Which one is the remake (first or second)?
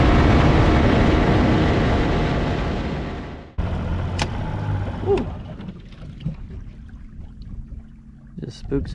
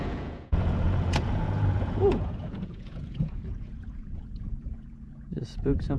second